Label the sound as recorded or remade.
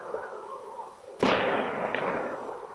remade